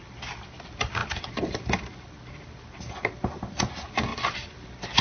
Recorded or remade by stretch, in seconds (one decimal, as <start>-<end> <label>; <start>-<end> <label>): 0.0-5.0 recorded